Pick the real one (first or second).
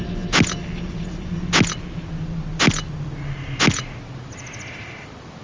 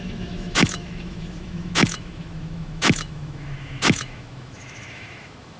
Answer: first